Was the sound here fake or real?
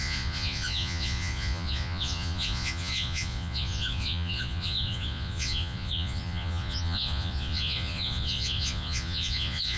fake